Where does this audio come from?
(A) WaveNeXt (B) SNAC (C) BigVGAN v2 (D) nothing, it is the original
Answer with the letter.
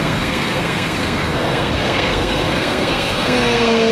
B